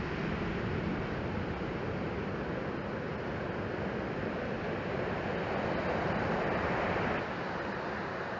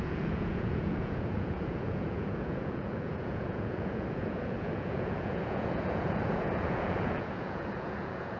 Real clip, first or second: first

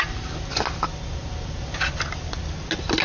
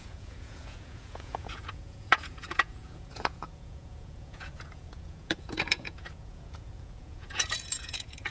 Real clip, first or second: first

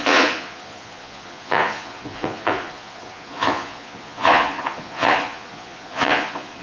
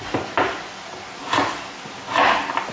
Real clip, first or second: second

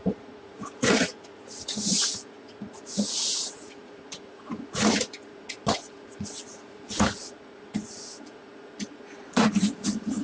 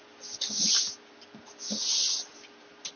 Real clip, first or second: second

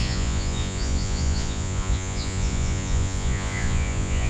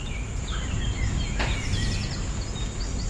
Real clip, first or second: second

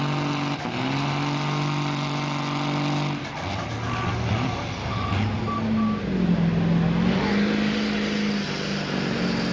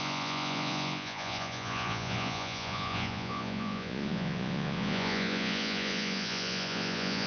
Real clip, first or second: first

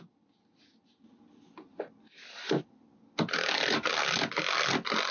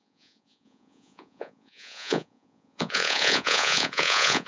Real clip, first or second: first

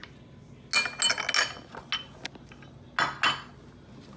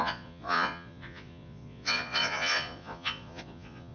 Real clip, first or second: first